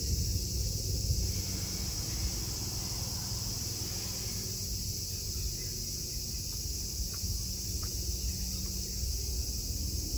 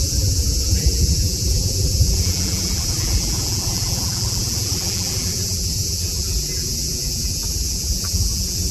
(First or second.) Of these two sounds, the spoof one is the second